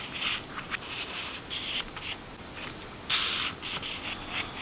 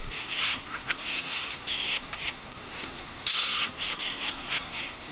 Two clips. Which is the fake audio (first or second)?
second